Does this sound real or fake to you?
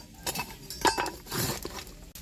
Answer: real